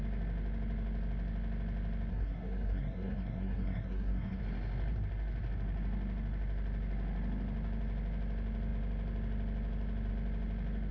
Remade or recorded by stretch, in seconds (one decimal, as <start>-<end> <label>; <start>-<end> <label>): 0.0-2.1 recorded; 2.1-4.4 remade; 4.4-10.9 recorded